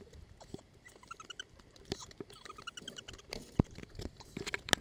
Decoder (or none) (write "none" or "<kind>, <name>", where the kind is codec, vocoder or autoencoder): none